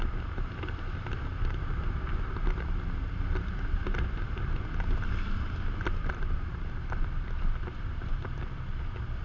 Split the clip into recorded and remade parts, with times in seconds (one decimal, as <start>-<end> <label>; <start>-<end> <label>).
0.0-9.2 recorded